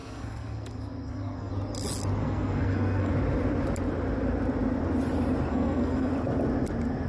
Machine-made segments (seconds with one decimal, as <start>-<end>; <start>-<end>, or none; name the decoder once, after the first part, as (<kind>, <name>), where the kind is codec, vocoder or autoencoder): 0.0-1.5 (codec, SNAC); 2.2-3.1; 5.5-6.1